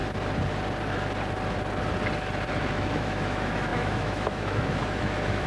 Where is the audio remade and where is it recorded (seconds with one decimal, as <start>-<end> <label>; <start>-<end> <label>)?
0.0-2.7 recorded; 2.7-5.5 remade